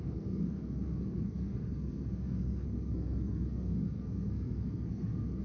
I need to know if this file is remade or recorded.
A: remade